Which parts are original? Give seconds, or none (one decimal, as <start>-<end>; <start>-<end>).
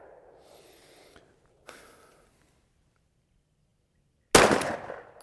0.0-5.2